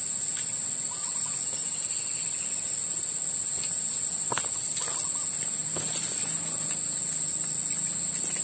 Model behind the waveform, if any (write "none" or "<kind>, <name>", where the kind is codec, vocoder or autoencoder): none